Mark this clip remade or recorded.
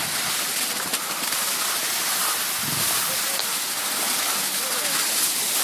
recorded